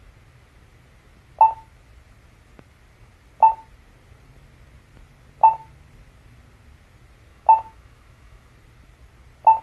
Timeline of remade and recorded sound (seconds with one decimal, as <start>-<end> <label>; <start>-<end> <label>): 0.0-7.3 recorded; 7.3-8.5 remade; 8.5-9.6 recorded